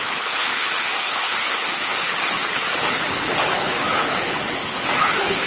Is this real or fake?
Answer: fake